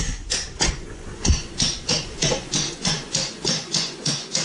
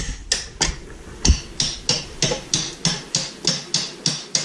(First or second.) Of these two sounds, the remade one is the first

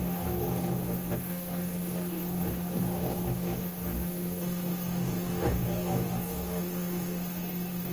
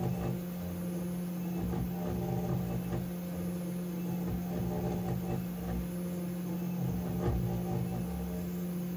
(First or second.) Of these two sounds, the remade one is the first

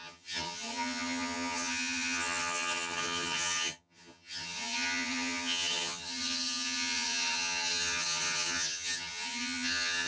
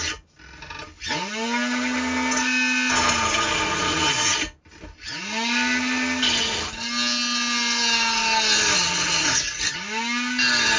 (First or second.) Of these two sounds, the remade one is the first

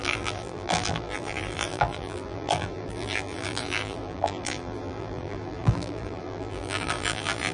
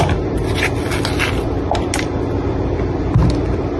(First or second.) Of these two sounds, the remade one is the first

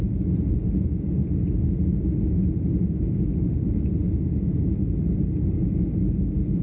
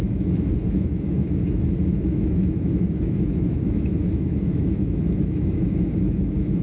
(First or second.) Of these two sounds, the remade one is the second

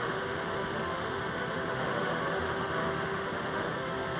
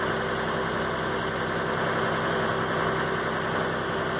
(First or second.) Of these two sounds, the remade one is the first